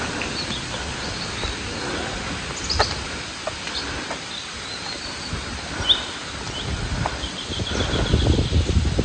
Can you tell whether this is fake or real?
real